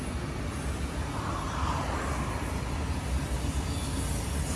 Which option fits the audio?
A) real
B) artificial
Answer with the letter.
A